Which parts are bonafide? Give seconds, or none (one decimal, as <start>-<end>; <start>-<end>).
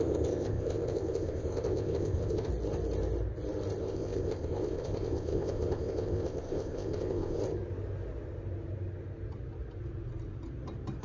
2.5-3.8; 7.4-11.0